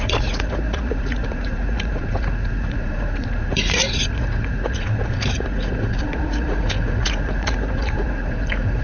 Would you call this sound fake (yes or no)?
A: yes